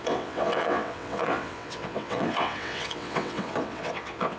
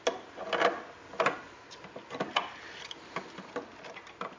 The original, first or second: second